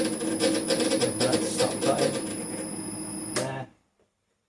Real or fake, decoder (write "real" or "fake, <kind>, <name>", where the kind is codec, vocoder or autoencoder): real